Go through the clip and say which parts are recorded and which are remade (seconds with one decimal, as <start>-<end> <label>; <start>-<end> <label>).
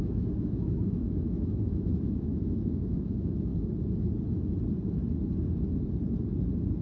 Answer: 0.0-3.5 remade; 3.5-6.8 recorded